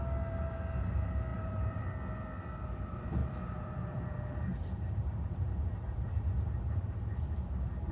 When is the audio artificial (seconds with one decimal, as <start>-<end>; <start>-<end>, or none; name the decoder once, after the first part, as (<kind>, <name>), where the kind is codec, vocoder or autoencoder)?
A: 1.3-1.8 (vocoder, BigVGAN v2); 3.2-7.9